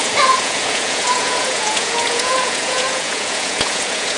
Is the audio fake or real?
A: fake